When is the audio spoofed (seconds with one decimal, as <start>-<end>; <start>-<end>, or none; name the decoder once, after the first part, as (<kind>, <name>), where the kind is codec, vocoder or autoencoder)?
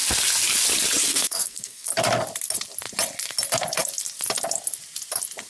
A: 1.1-1.9 (codec, SNAC)